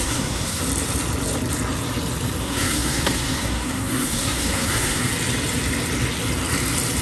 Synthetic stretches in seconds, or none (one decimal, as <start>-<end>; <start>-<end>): 0.0-0.6; 2.4-5.1